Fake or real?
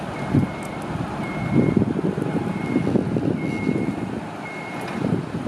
fake